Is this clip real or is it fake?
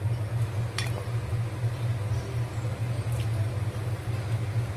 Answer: real